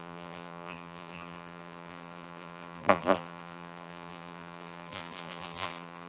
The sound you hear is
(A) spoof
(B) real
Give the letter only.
A